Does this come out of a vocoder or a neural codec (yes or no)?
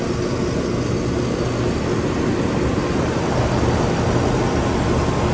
no